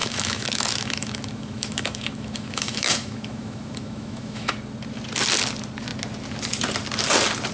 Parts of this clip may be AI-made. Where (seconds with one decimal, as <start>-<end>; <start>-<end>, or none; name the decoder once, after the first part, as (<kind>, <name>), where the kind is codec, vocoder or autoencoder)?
0.0-4.5 (autoencoder, DAC-VAE)